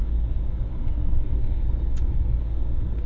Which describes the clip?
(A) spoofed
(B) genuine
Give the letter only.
A